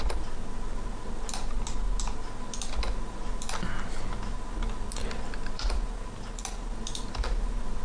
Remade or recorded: recorded